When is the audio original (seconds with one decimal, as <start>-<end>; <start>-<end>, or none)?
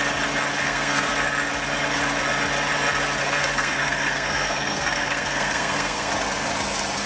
0.0-0.6; 1.1-3.2; 6.1-7.1